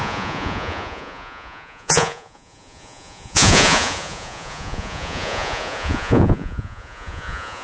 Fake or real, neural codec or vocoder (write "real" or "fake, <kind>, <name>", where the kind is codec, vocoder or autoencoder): fake, vocoder, Vocos